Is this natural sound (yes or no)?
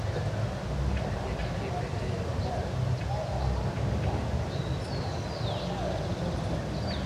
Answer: yes